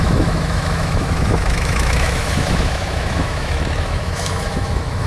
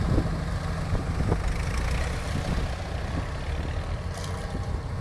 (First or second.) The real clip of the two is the second